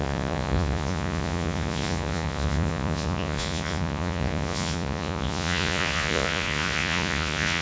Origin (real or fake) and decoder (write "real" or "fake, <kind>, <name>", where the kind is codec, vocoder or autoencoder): fake, vocoder, Vocos